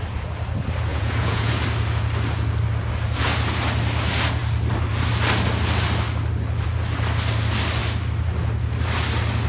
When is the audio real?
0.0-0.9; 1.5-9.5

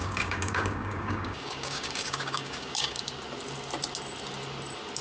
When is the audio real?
3.0-5.0